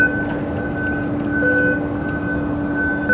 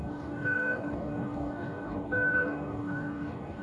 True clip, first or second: first